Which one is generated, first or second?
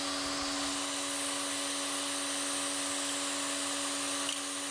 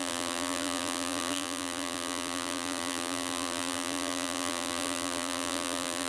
second